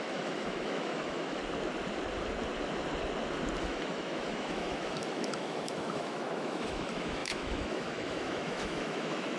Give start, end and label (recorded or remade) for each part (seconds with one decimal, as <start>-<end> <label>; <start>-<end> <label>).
0.0-1.4 remade; 1.4-3.6 recorded; 3.6-9.4 remade